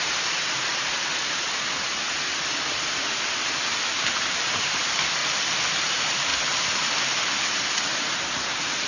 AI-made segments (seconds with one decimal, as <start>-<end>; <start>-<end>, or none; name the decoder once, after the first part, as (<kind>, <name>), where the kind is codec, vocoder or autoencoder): 0.0-1.1 (vocoder, BigVGAN v2); 3.5-5.2; 5.7-6.3; 8.4-8.9